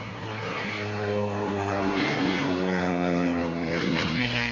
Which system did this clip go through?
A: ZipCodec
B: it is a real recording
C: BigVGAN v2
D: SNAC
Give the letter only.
D